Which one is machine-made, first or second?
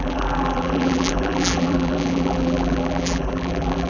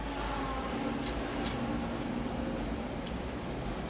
first